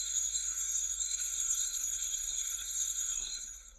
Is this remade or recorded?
remade